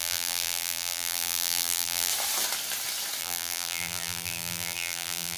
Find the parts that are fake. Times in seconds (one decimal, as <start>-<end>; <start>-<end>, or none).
0.0-2.1; 3.2-5.4